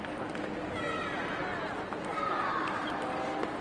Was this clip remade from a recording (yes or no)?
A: no